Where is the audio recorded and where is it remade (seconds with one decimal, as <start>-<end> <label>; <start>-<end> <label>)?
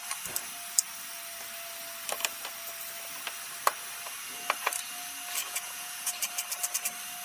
0.0-5.4 recorded; 5.4-6.1 remade; 6.1-7.2 recorded